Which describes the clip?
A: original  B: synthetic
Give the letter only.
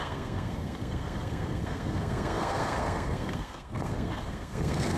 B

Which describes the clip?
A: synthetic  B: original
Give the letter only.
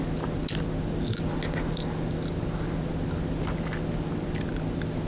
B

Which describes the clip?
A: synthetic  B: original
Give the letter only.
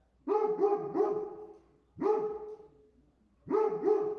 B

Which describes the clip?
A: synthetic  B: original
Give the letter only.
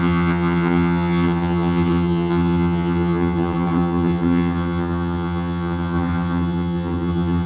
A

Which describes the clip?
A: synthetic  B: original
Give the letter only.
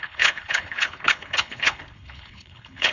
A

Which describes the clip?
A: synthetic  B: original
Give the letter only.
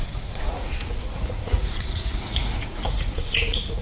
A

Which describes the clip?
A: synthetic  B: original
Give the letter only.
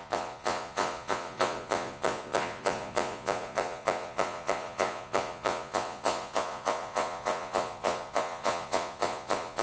A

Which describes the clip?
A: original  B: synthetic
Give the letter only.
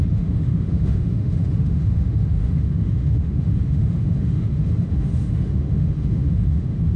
B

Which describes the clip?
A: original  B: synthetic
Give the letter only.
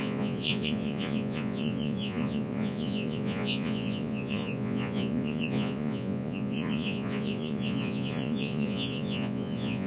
B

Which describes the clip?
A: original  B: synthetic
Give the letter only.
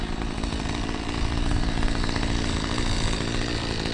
A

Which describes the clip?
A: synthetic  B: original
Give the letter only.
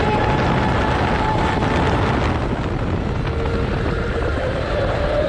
B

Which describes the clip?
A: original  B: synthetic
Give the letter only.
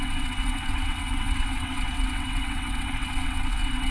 B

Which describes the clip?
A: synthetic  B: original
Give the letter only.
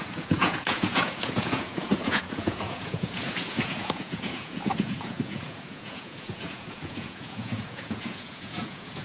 A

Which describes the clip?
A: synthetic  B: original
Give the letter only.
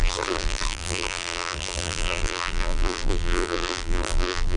A